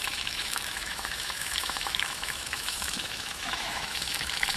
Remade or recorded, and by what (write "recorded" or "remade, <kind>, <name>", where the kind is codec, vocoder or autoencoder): remade, autoencoder, DAC-VAE